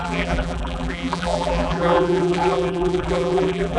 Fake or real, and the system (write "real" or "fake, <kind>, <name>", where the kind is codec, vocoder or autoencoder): fake, vocoder, BigVGAN v2